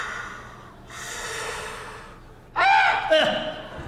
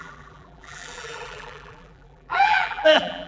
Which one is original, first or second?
first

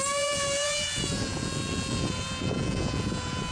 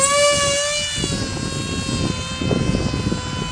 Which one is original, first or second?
second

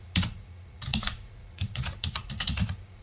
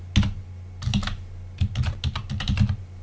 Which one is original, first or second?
second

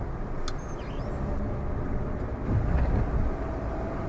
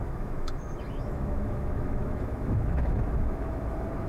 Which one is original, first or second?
first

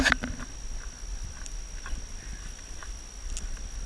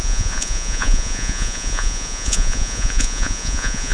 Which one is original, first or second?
first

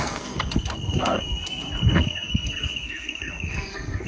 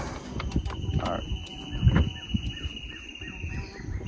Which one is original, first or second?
second